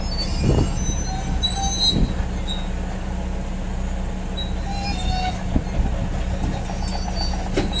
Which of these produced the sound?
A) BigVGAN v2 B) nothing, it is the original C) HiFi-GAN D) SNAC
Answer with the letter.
B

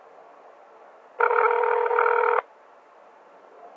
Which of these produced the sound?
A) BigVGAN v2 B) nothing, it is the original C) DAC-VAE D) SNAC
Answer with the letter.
B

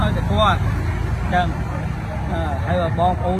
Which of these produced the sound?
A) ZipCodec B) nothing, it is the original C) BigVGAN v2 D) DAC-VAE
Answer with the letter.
B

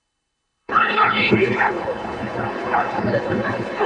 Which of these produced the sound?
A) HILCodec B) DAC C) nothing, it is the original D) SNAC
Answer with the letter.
A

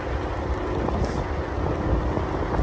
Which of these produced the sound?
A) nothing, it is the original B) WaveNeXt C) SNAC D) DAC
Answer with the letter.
A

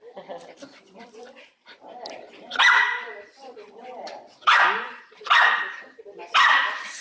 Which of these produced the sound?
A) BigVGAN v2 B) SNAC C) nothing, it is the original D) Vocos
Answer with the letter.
A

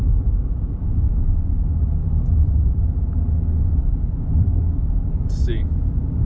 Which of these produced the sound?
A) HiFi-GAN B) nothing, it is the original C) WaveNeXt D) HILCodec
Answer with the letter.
B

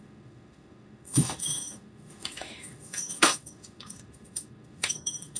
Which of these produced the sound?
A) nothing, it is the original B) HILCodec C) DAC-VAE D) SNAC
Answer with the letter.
C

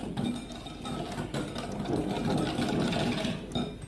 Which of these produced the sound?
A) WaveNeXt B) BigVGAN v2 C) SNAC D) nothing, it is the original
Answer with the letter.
D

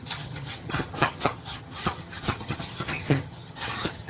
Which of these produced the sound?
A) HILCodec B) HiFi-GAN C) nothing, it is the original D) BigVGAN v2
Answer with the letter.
B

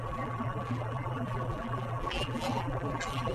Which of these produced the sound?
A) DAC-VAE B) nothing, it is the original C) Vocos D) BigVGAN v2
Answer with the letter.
D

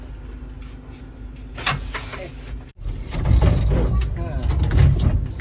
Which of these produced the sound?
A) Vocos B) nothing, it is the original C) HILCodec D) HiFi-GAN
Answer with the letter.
B